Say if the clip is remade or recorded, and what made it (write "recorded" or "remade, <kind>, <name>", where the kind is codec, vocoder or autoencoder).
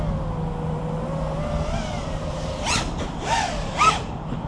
recorded